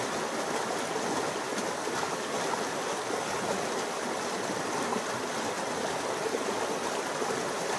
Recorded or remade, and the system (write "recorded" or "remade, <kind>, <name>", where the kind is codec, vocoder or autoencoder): recorded